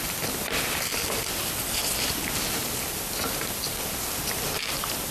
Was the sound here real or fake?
real